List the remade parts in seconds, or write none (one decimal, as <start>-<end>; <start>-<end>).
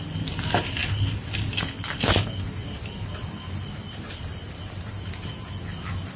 none